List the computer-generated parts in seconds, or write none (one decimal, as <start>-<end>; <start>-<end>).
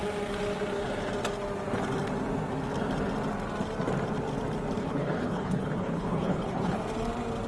4.8-6.8